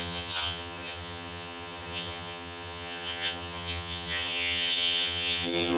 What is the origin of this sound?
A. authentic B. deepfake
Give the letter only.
B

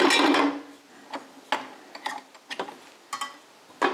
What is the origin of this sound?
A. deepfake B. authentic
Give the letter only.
B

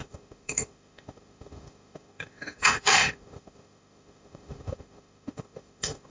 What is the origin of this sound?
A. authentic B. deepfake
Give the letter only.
B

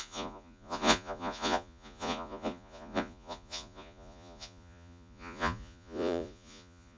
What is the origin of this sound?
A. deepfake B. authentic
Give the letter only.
A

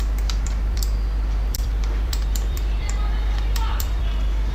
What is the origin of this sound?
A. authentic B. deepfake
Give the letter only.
B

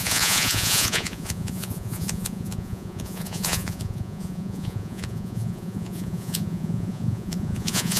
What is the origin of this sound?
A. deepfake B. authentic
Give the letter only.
A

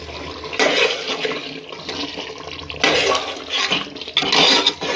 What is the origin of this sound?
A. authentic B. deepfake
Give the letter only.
A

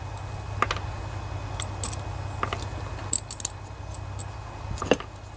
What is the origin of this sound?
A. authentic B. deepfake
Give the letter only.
A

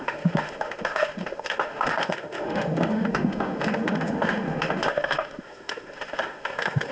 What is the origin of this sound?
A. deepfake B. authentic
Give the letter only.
A